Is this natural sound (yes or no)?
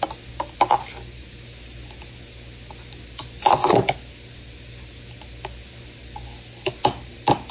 yes